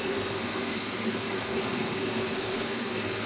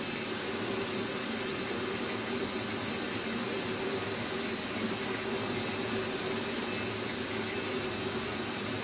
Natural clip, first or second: second